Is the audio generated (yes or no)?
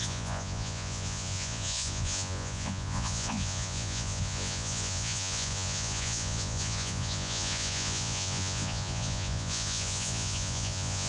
yes